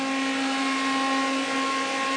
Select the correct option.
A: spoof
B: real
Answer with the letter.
B